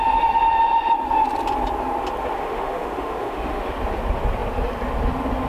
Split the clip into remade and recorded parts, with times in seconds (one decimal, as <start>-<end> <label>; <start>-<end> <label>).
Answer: 0.0-2.4 recorded; 2.4-3.7 remade; 3.7-5.5 recorded